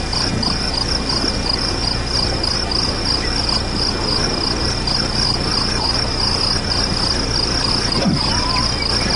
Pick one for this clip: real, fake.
real